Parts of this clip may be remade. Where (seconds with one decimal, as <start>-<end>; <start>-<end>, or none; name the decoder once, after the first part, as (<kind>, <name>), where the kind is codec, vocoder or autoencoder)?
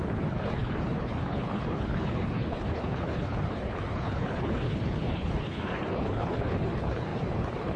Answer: 0.0-7.8 (codec, HILCodec)